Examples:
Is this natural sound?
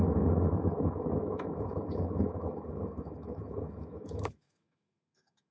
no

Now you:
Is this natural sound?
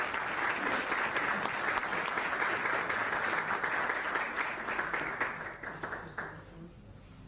yes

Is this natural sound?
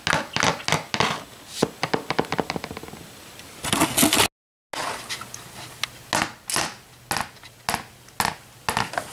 yes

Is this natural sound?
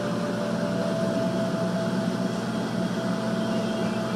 yes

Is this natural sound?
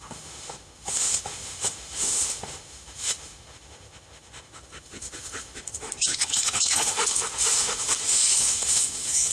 no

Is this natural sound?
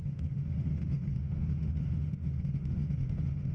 no